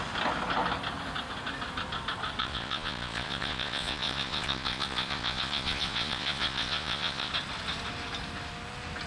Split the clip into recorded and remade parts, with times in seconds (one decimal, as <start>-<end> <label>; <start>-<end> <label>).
0.0-2.4 recorded; 2.4-7.3 remade; 7.3-9.1 recorded